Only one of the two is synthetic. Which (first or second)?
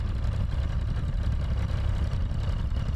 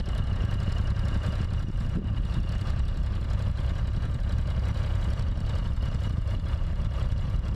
second